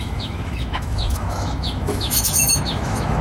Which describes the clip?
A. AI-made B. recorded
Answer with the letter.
A